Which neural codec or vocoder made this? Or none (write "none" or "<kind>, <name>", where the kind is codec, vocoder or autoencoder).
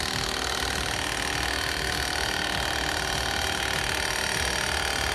none